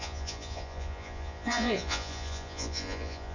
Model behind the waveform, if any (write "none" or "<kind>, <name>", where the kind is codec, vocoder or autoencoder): vocoder, Vocos